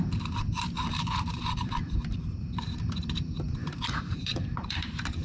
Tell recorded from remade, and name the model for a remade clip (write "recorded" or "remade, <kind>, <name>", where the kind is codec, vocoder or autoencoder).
remade, vocoder, BigVGAN v2